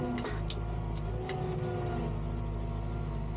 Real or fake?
real